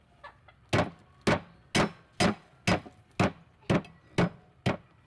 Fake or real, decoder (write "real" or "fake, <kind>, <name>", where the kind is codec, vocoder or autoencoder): real